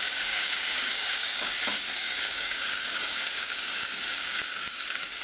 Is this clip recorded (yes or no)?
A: no